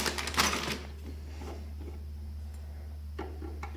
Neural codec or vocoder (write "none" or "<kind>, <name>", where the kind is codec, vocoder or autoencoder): none